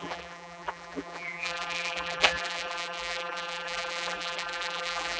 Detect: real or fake fake